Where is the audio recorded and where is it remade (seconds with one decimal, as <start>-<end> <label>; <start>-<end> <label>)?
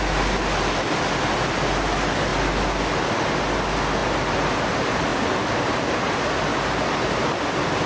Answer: 0.0-7.9 recorded